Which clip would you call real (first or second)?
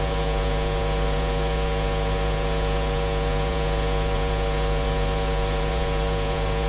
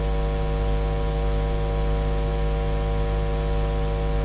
second